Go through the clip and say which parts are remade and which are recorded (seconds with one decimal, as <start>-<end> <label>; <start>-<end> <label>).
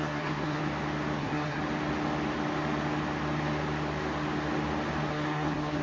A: 0.0-0.6 remade; 0.6-1.2 recorded; 1.2-1.6 remade; 1.6-5.1 recorded; 5.1-5.8 remade